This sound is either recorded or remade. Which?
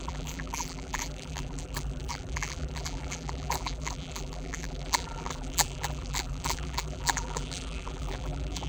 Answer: remade